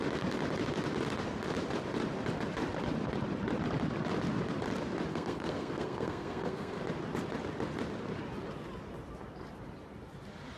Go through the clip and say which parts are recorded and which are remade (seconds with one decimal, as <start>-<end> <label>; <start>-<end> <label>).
0.0-5.1 recorded; 5.1-6.8 remade; 6.8-10.6 recorded